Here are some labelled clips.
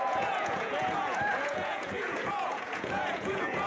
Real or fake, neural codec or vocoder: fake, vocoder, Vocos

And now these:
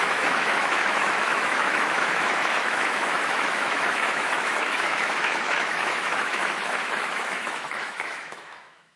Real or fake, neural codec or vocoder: fake, autoencoder, DAC-VAE